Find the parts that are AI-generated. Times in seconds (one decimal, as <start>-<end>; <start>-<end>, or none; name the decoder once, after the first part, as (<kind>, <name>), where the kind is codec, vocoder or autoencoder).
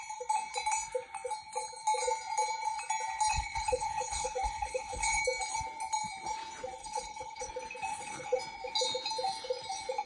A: 3.3-5.2 (codec, HILCodec); 6.8-7.5; 7.9-8.4